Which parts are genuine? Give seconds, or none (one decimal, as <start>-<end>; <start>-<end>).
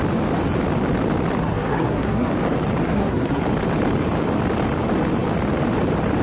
0.0-1.4; 2.3-2.8; 3.4-6.2